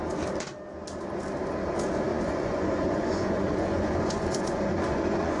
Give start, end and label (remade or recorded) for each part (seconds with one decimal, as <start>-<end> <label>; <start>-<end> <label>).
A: 0.0-2.1 recorded; 2.1-5.4 remade